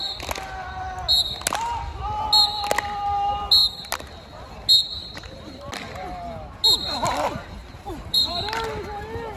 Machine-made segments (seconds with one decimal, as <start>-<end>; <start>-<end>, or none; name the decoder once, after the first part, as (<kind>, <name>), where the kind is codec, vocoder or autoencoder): 5.0-5.6 (vocoder, BigVGAN v2); 7.7-8.3